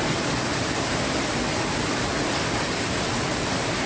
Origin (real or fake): real